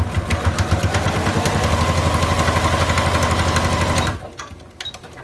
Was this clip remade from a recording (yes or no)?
no